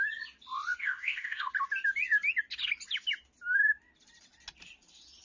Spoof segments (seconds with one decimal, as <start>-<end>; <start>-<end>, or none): 0.8-1.5